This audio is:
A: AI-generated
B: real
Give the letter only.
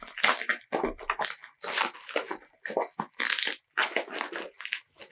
B